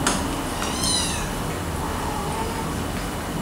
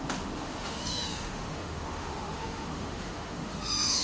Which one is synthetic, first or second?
second